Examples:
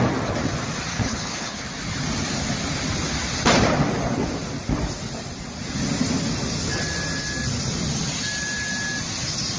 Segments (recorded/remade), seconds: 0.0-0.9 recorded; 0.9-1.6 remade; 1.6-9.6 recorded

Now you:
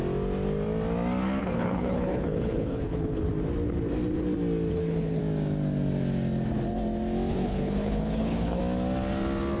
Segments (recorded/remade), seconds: 0.0-1.4 recorded; 1.4-3.3 remade; 3.3-4.7 recorded; 4.7-5.2 remade; 5.2-7.3 recorded; 7.3-8.6 remade; 8.6-9.6 recorded

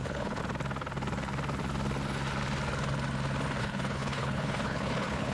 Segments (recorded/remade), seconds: 0.0-0.4 remade; 0.4-3.6 recorded; 3.6-5.3 remade

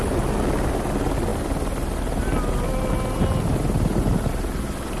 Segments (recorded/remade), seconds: 0.0-5.0 recorded